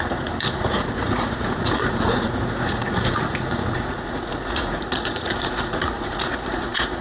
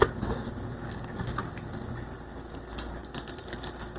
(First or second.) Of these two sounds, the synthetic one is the first